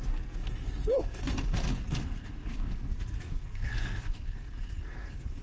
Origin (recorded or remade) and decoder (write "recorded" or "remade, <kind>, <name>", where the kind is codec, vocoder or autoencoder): remade, codec, SNAC